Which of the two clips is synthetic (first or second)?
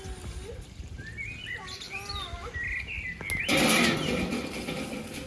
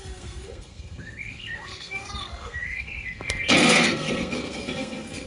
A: second